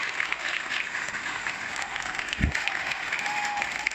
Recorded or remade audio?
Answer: remade